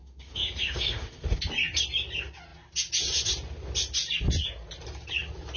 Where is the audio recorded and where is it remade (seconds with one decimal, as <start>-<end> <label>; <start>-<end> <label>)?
0.0-1.4 remade; 1.4-5.6 recorded